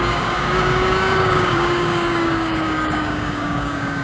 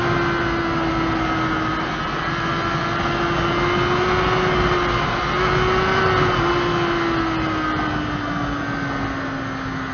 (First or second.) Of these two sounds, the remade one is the first